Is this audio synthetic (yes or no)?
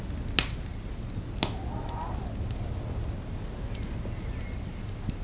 no